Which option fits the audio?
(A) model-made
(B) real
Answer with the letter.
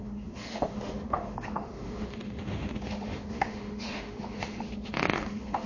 A